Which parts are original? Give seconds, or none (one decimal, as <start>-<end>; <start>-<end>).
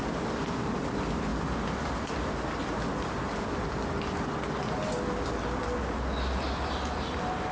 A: 0.0-7.5